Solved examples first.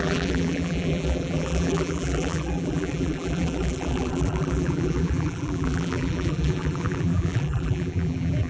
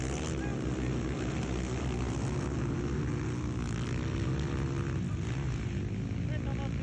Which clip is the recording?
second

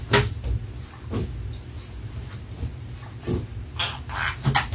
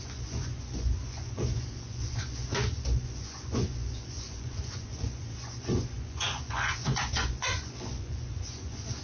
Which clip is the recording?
first